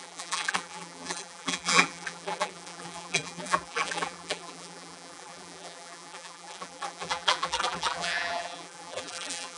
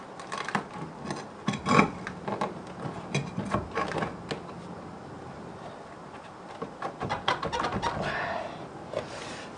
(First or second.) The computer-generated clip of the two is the first